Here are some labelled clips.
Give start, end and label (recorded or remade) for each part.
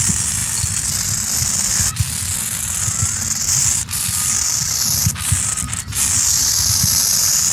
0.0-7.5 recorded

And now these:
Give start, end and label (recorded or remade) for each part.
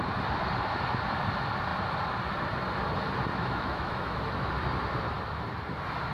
0.0-3.3 recorded; 3.3-4.5 remade; 4.5-6.1 recorded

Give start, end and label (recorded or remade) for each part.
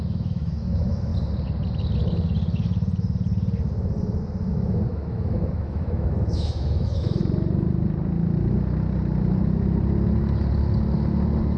0.0-1.1 remade; 1.1-4.5 recorded; 4.5-7.2 remade; 7.2-11.6 recorded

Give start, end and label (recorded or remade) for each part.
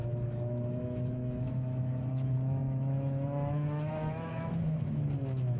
0.0-5.6 remade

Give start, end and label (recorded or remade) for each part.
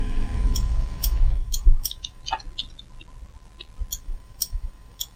0.0-2.2 remade; 2.2-4.0 recorded; 4.0-5.2 remade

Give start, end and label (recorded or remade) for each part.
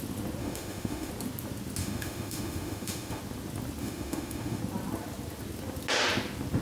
0.0-0.4 recorded; 0.4-1.1 remade; 1.1-1.8 recorded; 1.8-3.2 remade; 3.2-3.8 recorded; 3.8-4.6 remade; 4.6-6.6 recorded